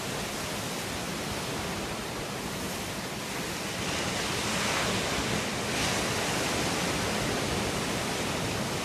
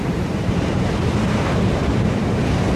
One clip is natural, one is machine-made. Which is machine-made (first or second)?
second